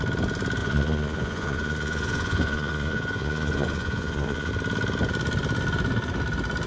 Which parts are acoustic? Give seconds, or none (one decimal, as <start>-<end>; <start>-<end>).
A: 0.0-0.6; 4.5-6.7